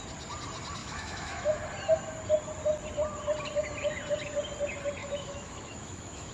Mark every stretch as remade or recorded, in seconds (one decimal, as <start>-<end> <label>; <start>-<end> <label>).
0.0-0.8 recorded; 0.8-1.6 remade; 1.6-5.0 recorded; 5.0-6.3 remade